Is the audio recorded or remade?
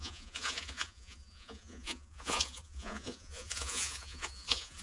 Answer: remade